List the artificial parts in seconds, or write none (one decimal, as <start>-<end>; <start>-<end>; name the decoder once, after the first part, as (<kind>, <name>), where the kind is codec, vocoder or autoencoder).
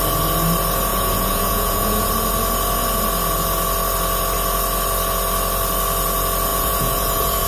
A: 0.9-2.1 (vocoder, Vocos); 6.5-7.5